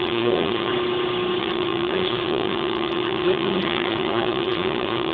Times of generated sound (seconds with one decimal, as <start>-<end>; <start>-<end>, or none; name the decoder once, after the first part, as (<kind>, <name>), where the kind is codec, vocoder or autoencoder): 0.0-0.7 (vocoder, Vocos); 1.4-5.1